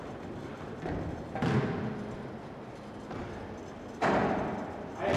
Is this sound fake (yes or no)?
no